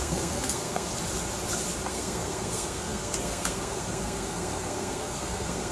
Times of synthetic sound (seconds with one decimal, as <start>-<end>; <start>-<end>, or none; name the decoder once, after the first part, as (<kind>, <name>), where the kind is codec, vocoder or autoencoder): 0.0-0.9 (codec, SNAC); 1.9-5.7